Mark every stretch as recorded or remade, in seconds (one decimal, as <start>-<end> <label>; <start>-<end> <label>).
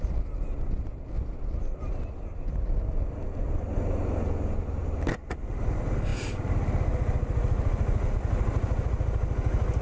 0.0-9.8 recorded